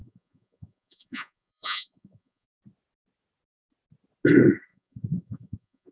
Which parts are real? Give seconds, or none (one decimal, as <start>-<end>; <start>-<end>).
2.6-4.7